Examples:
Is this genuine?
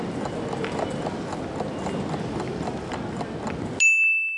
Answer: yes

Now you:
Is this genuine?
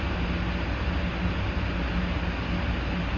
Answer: yes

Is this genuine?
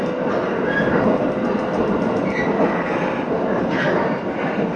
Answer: yes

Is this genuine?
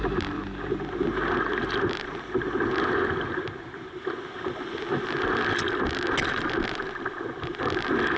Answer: yes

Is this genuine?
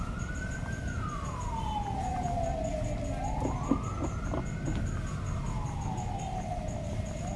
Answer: yes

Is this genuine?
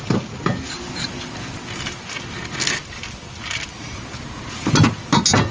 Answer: yes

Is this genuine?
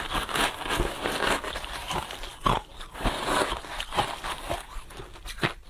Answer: yes